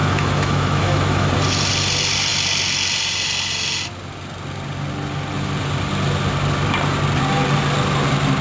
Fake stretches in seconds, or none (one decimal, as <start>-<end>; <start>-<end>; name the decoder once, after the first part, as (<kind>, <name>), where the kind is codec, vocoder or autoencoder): 0.0-1.3 (autoencoder, DAC-VAE)